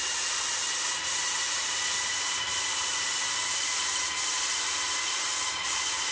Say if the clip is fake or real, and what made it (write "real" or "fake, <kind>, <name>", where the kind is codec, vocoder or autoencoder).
real